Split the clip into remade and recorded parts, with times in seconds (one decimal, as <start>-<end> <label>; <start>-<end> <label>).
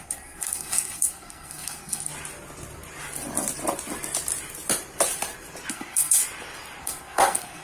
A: 0.0-2.1 remade; 2.1-5.7 recorded; 5.7-6.2 remade; 6.2-6.8 recorded; 6.8-7.6 remade